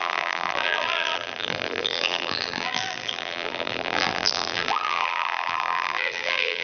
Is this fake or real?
fake